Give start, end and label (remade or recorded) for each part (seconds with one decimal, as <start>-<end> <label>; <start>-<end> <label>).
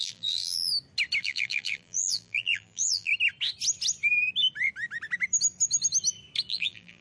0.0-0.7 remade; 0.7-1.2 recorded; 1.2-3.1 remade; 3.1-6.5 recorded; 6.5-7.0 remade